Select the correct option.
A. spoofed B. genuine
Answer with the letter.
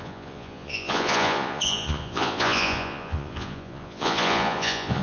A